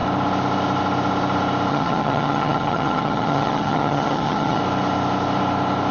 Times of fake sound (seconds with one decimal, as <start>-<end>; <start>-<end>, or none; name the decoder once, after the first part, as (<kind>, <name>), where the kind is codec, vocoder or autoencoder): 1.7-4.6 (vocoder, HiFi-GAN)